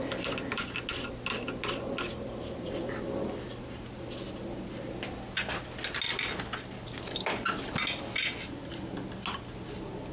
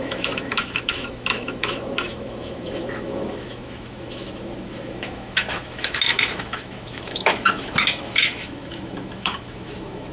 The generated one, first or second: second